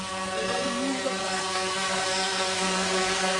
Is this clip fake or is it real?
fake